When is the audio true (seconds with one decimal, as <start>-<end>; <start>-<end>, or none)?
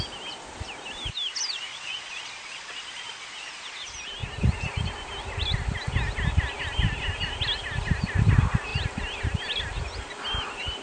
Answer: 0.0-1.7; 3.3-10.8